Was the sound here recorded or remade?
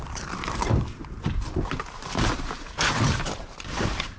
remade